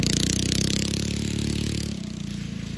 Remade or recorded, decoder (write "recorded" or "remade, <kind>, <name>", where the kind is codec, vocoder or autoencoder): remade, vocoder, BigVGAN v2